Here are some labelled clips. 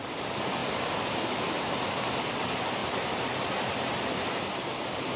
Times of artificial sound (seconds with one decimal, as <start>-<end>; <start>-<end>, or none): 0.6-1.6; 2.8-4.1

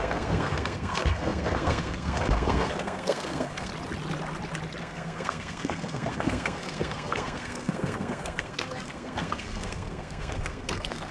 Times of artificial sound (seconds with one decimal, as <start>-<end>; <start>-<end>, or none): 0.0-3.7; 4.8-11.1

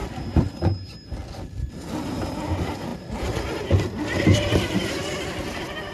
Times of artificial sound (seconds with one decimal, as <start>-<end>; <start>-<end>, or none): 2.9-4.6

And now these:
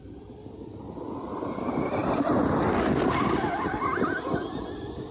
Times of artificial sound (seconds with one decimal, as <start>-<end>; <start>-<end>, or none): none

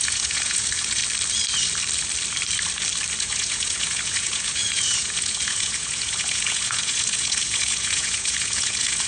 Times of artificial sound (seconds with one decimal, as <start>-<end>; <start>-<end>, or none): 0.0-1.0; 3.2-9.1